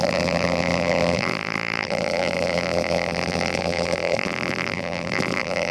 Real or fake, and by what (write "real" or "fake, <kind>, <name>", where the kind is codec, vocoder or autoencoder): fake, vocoder, BigVGAN v2